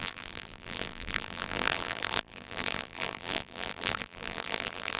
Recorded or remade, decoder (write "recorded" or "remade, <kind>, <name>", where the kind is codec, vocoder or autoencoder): remade, vocoder, BigVGAN v2